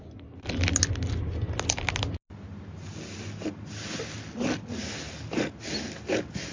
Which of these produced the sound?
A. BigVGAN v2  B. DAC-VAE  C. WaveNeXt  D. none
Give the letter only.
D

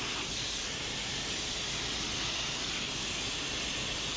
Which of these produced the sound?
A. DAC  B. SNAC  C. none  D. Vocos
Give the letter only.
C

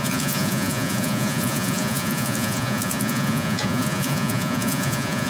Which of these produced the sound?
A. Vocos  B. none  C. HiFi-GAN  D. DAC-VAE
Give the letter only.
A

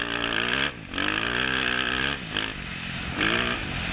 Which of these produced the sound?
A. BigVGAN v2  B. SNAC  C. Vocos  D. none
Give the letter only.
D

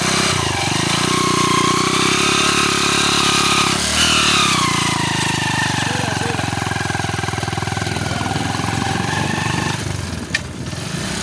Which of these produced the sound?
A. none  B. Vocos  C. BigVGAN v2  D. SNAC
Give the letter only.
A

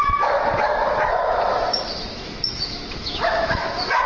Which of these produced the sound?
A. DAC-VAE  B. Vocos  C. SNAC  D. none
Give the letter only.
A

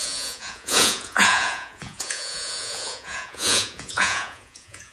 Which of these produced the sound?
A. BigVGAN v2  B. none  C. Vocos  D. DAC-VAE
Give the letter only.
C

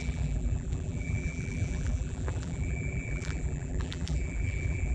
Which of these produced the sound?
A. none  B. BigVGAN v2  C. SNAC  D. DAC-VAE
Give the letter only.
B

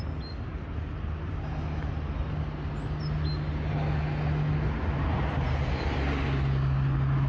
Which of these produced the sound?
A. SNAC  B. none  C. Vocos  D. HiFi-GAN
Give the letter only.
B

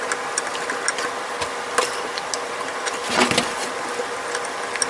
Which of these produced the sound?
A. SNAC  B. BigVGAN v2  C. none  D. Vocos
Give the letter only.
C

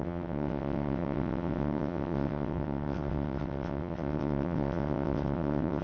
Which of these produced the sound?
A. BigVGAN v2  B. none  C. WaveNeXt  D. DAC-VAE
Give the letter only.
C